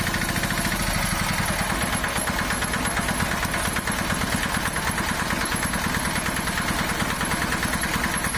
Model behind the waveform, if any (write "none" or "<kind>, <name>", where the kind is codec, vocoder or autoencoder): none